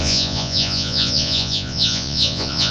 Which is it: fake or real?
fake